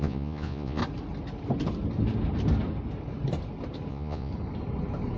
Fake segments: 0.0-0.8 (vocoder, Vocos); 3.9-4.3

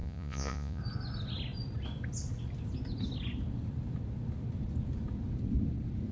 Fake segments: 0.0-0.8 (vocoder, Vocos)

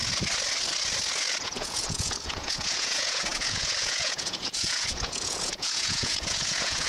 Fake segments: 1.4-6.9 (vocoder, Vocos)

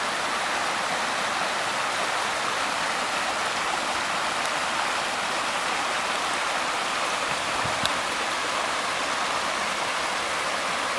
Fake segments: none

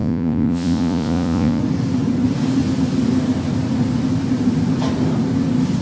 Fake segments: 0.0-1.6 (vocoder, Vocos)